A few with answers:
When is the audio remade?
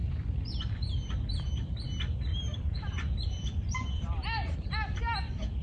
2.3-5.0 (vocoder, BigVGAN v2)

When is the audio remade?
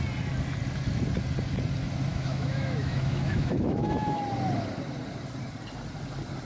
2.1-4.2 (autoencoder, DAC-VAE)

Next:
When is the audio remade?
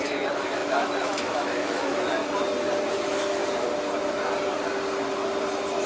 0.0-2.2 (autoencoder, DAC-VAE); 2.9-3.4